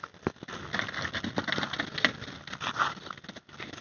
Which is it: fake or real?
real